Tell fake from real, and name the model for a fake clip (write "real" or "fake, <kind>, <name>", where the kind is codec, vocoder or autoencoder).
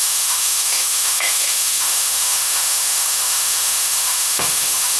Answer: fake, autoencoder, DAC-VAE